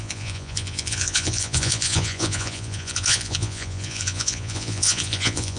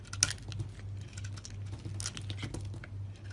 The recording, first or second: second